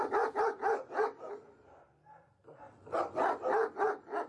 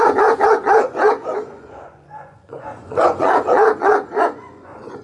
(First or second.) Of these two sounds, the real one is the first